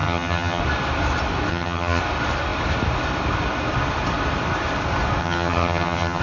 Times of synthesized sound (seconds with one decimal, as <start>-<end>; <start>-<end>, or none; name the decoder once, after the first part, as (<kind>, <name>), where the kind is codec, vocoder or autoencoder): 0.0-0.6 (vocoder, HiFi-GAN); 1.5-2.0; 5.2-6.2